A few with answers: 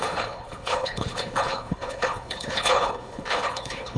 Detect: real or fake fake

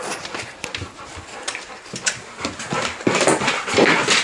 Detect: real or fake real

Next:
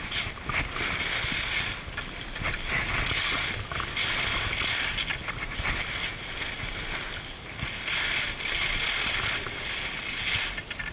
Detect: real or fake real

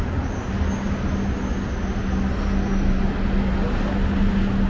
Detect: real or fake real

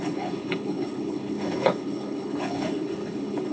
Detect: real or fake fake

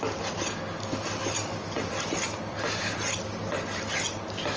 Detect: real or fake real